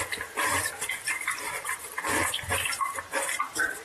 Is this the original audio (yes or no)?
no